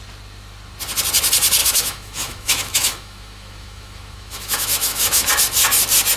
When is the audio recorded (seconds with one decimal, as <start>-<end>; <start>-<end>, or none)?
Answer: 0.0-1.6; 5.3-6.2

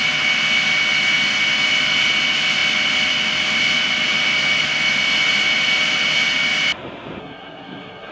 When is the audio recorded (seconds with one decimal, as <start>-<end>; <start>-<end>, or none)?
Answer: 0.0-7.2

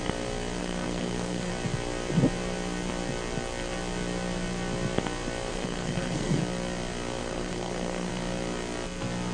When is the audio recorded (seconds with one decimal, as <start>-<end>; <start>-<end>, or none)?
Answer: 0.0-0.6; 1.5-5.5; 6.4-7.2; 8.1-9.3

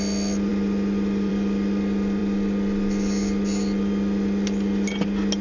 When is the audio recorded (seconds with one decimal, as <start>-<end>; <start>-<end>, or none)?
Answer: 0.0-5.4